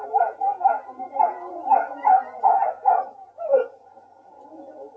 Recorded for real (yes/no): no